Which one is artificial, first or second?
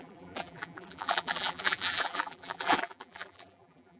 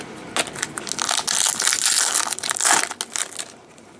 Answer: first